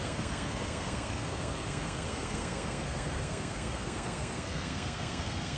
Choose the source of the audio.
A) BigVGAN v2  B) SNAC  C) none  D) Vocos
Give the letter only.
B